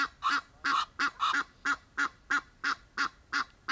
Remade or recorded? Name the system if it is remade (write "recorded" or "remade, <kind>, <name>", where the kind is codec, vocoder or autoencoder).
recorded